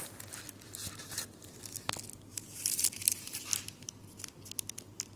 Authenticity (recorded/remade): recorded